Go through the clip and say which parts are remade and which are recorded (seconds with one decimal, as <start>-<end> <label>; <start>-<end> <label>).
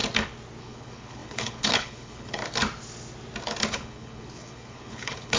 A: 0.0-0.6 recorded; 0.6-2.4 remade; 2.4-3.7 recorded; 3.7-5.4 remade